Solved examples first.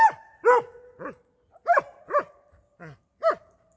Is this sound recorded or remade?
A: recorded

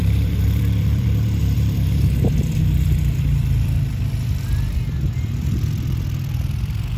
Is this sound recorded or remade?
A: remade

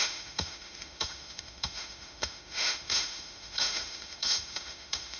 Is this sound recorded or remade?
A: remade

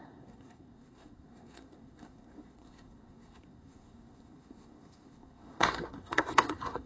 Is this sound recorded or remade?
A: remade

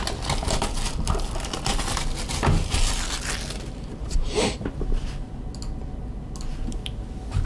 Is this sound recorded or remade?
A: recorded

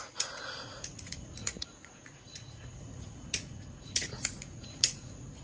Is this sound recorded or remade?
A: remade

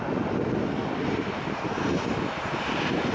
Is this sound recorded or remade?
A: recorded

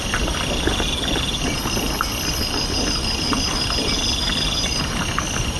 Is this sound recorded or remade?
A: recorded